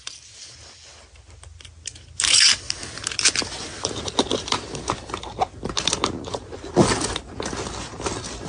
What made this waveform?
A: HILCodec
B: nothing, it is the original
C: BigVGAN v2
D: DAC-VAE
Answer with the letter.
B